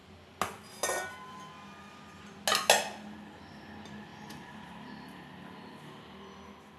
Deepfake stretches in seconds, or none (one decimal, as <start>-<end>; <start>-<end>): none